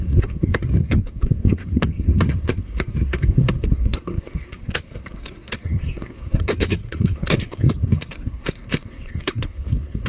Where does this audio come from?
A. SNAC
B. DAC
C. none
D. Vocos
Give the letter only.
A